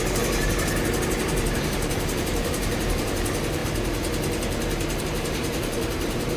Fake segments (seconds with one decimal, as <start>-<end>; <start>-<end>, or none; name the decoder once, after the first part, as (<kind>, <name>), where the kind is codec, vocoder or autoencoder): 0.0-3.6 (vocoder, BigVGAN v2); 5.0-6.4